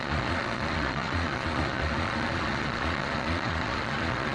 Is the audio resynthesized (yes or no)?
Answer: yes